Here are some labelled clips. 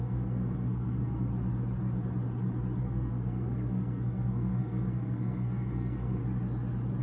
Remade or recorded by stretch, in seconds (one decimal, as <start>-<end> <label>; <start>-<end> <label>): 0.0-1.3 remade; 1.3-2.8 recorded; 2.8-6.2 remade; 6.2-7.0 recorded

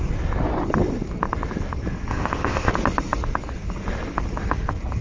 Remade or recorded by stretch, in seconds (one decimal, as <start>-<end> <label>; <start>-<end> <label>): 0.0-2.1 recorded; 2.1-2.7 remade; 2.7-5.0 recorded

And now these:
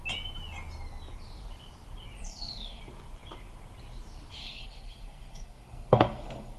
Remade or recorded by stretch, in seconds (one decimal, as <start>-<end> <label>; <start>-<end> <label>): 0.0-2.2 recorded; 2.2-2.8 remade; 2.8-4.4 recorded; 4.4-6.6 remade